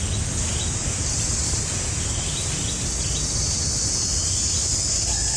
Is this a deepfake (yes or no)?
no